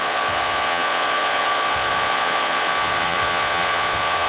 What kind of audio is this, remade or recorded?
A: remade